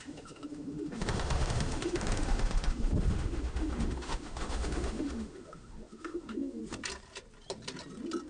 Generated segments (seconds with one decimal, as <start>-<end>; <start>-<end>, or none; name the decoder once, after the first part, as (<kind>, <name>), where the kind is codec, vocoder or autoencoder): 0.0-6.6 (autoencoder, DAC-VAE)